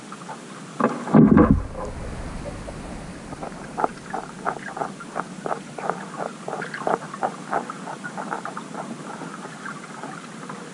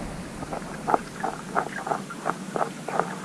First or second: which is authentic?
second